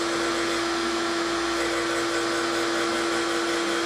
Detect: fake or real real